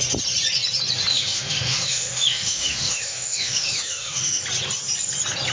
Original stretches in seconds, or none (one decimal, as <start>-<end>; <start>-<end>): 0.0-1.1; 4.4-5.5